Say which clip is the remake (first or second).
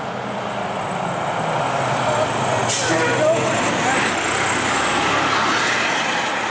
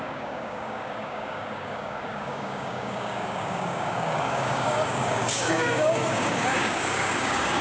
second